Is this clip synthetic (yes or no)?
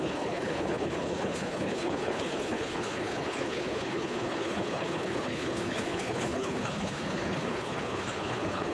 yes